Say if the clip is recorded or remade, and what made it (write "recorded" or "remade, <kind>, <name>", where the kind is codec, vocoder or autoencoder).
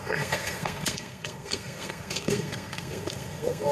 remade, codec, SNAC